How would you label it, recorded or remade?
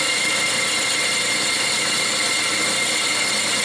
recorded